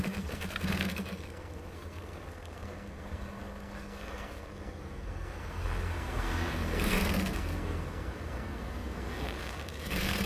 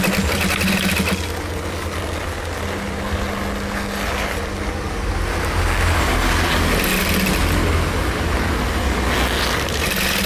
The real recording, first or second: second